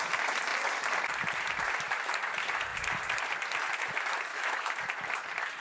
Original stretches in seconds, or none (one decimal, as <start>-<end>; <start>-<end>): 0.0-4.3; 4.8-5.6